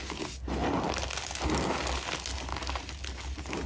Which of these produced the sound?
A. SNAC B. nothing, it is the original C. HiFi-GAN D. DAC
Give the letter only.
B